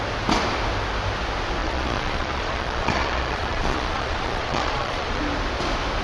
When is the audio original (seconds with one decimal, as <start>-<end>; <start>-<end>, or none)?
0.0-1.6; 5.2-6.0